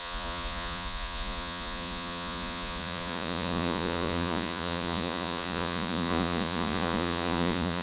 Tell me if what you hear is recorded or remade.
remade